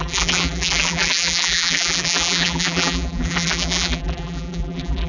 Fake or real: fake